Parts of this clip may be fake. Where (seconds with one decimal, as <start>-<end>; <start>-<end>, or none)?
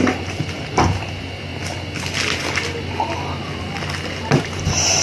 0.0-1.5; 4.4-5.0